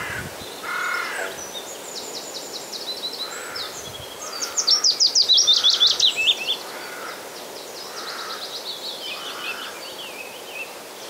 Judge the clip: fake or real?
real